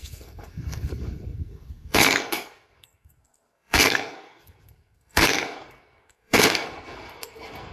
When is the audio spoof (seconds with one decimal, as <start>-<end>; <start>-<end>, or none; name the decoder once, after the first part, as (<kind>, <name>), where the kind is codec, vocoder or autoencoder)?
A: 0.0-7.7 (codec, SNAC)